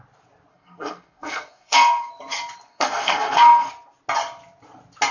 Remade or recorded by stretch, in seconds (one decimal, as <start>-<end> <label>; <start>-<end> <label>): 0.0-0.5 recorded; 0.5-2.1 remade; 2.1-2.7 recorded; 2.7-3.7 remade; 3.7-5.1 recorded